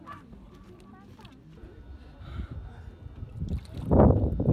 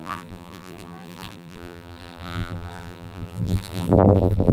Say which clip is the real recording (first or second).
first